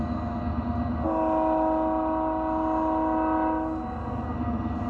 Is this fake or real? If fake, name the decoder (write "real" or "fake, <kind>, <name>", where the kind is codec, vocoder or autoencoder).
real